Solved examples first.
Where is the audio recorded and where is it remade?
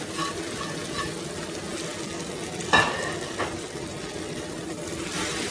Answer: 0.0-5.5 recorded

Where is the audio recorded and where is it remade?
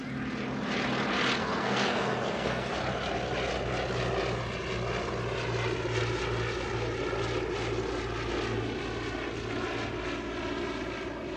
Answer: 0.0-1.4 recorded; 1.4-2.7 remade; 2.7-11.4 recorded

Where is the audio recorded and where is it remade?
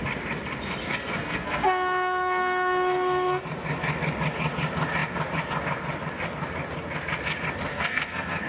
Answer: 0.0-0.8 recorded; 0.8-3.4 remade; 3.4-7.7 recorded; 7.7-8.5 remade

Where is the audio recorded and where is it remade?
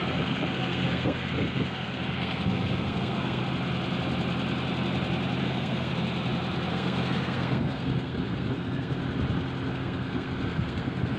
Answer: 0.0-3.4 remade; 3.4-5.4 recorded; 5.4-5.9 remade; 5.9-6.7 recorded; 6.7-9.0 remade; 9.0-9.7 recorded; 9.7-11.2 remade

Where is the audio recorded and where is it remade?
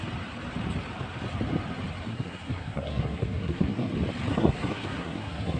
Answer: 0.0-2.1 recorded; 2.1-3.9 remade; 3.9-4.3 recorded; 4.3-5.6 remade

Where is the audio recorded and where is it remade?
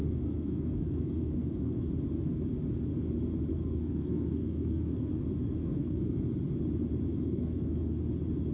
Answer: 0.0-1.9 remade; 1.9-3.5 recorded; 3.5-5.1 remade; 5.1-5.6 recorded; 5.6-6.2 remade; 6.2-7.1 recorded; 7.1-8.0 remade; 8.0-8.5 recorded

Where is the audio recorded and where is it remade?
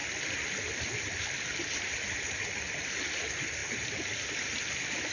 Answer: 0.0-5.1 recorded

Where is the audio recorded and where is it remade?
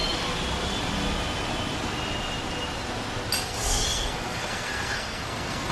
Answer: 0.0-3.4 recorded; 3.4-5.7 remade